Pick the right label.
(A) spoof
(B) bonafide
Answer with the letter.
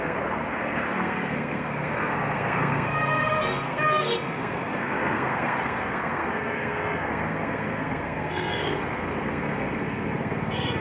A